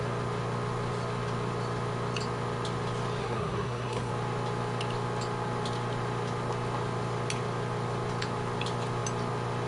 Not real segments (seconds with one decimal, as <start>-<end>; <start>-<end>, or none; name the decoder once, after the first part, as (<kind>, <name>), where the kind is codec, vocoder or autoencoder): 3.2-4.1 (codec, SNAC)